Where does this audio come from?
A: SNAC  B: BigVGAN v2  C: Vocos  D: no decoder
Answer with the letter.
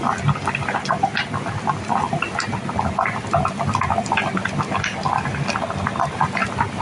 D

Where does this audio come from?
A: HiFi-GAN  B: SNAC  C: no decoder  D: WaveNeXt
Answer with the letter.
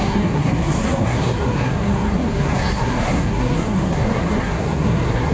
B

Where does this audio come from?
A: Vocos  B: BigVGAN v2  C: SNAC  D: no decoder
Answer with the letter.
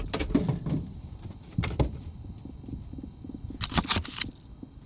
D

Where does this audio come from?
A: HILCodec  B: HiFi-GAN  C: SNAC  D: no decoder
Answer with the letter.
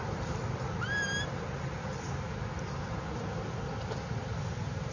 D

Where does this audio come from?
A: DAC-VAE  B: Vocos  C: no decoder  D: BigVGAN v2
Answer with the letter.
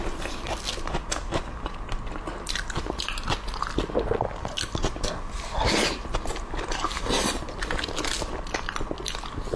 C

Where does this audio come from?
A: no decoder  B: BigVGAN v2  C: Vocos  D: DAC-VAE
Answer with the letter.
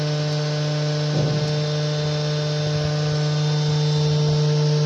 A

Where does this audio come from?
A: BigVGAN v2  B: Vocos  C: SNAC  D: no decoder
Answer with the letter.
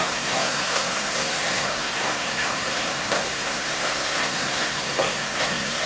C